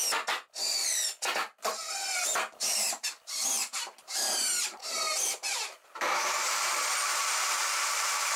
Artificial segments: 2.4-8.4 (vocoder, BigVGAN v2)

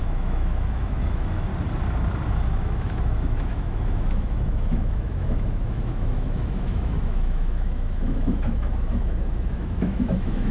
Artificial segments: 0.0-1.5 (autoencoder, DAC-VAE); 2.6-10.5

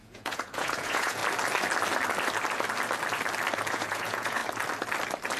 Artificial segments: 0.0-1.2 (vocoder, Vocos); 3.7-4.4

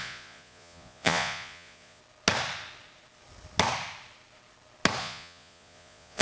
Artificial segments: 0.0-2.0 (vocoder, Vocos); 5.0-6.2

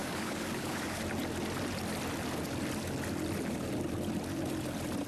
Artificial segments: 0.0-1.0 (codec, DAC)

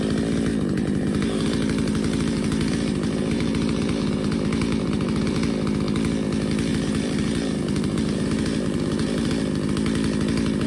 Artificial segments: 0.5-5.5 (vocoder, BigVGAN v2); 6.7-9.3

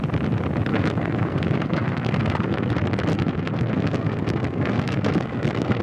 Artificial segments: 0.7-2.7 (codec, SNAC); 3.1-5.8